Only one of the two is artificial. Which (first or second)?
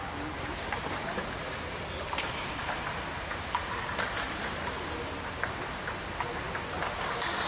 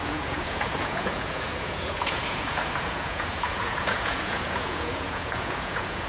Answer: second